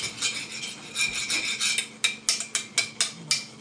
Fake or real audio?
real